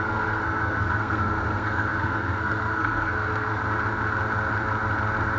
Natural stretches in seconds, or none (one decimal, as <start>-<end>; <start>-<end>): 3.6-5.4